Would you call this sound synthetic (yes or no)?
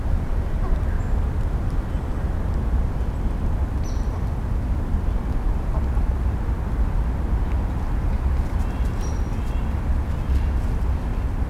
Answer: no